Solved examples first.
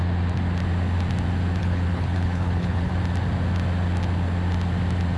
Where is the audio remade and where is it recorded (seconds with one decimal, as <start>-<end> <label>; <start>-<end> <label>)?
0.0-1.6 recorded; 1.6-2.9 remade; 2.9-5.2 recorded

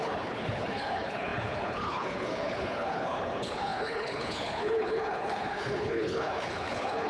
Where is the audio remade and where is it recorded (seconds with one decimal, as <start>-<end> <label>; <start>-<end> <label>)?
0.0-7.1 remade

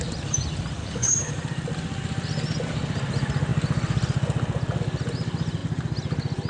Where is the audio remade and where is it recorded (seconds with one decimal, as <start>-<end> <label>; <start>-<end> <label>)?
0.0-0.8 recorded; 0.8-1.3 remade; 1.3-6.5 recorded

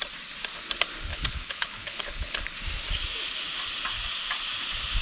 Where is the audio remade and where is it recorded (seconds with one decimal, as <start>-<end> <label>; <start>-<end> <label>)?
0.0-1.1 recorded; 1.1-2.4 remade; 2.4-5.0 recorded

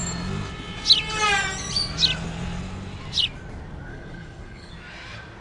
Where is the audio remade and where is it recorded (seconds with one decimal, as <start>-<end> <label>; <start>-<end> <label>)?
0.0-3.9 recorded; 3.9-4.7 remade; 4.7-5.4 recorded

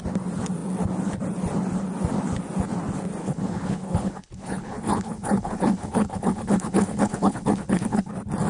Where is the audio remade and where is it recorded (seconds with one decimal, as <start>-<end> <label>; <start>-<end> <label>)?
0.0-3.2 recorded; 3.2-8.1 remade; 8.1-8.5 recorded

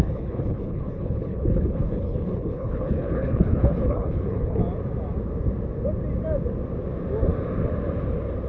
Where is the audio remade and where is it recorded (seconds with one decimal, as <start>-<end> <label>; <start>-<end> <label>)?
0.0-4.6 remade; 4.6-8.5 recorded

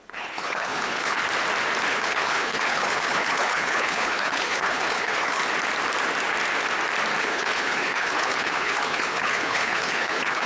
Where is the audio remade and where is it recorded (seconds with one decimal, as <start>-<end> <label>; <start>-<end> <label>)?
0.0-1.2 remade; 1.2-1.9 recorded; 1.9-5.4 remade; 5.4-7.2 recorded; 7.2-10.5 remade